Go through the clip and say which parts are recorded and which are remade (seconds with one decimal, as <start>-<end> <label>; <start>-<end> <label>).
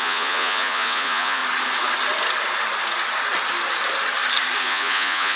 0.0-1.4 remade; 1.4-4.6 recorded; 4.6-5.4 remade